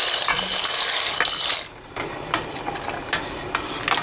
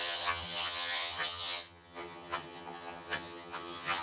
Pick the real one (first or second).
first